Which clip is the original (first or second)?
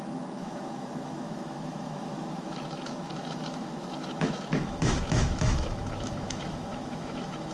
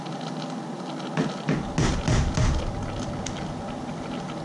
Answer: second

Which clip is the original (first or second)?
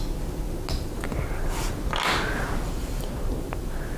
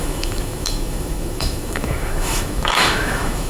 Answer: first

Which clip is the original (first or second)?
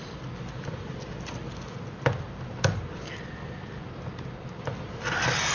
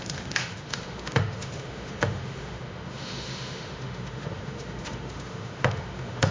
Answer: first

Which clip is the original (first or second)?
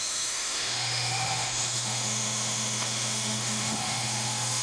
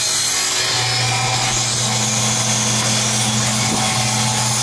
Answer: second